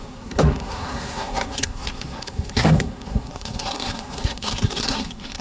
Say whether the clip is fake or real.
fake